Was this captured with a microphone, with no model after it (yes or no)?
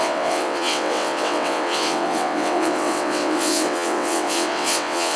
no